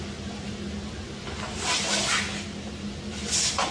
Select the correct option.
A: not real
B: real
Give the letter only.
B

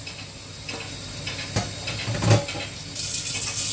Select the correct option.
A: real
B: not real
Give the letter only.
A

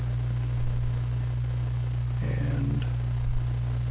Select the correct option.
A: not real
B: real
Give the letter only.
B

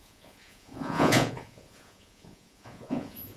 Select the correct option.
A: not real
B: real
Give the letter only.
A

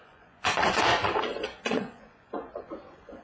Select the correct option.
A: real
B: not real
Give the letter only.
B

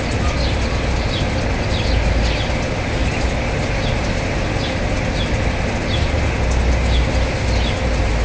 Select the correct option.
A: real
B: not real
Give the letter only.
A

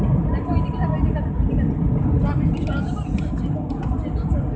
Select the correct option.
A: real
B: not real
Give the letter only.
A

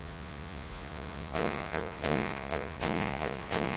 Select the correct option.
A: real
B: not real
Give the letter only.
B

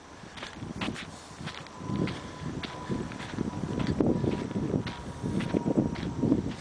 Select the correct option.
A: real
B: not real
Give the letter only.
A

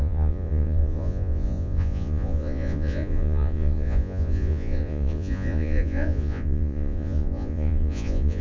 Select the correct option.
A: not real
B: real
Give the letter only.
A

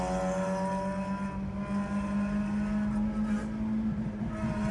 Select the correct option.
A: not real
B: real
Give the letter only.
B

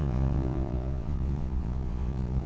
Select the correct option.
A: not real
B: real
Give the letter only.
A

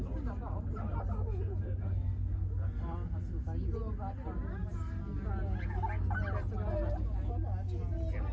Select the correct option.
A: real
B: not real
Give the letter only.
A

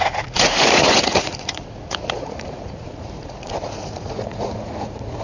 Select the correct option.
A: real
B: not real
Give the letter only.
B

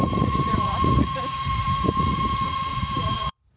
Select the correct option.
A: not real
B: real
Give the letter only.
A